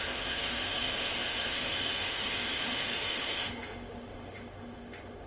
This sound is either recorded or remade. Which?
remade